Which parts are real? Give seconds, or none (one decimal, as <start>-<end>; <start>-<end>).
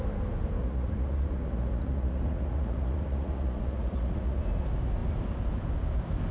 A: 0.0-0.6; 4.4-6.3